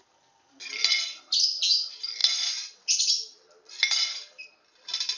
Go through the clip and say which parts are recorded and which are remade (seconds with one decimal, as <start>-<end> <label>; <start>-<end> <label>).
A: 0.0-5.2 recorded